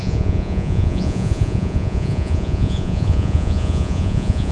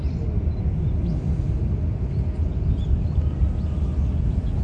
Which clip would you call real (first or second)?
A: second